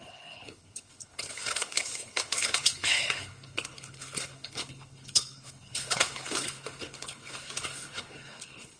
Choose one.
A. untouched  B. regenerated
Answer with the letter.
B